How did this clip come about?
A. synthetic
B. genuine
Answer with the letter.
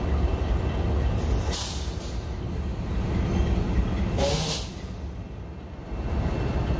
B